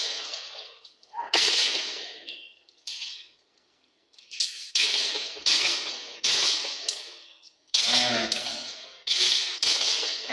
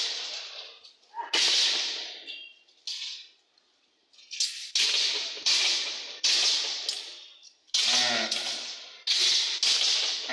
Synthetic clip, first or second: first